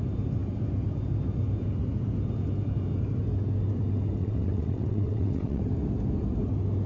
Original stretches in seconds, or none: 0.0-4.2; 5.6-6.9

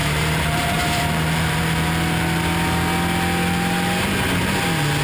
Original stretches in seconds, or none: 1.6-5.0

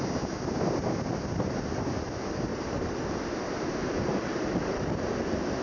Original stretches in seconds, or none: 0.0-2.5; 3.1-5.6

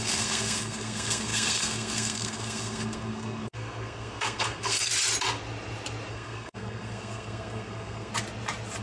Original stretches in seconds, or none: 4.9-6.1; 8.1-8.8

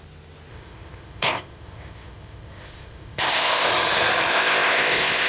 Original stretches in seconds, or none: 0.0-0.5; 3.7-4.3

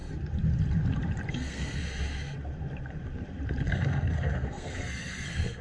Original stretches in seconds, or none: 0.0-1.3; 1.8-3.7

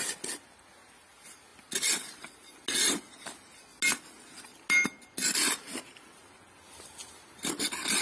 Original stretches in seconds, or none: 0.0-8.0